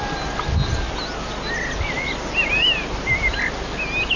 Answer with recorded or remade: recorded